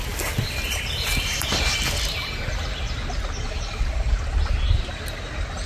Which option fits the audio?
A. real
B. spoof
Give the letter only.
A